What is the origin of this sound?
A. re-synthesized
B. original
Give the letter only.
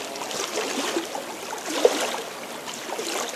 B